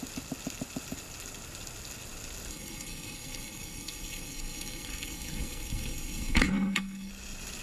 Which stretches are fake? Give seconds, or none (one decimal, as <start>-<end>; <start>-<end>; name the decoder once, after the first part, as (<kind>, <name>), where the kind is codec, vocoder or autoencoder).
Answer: 2.5-7.1 (codec, SNAC)